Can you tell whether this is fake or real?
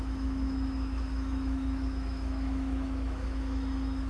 fake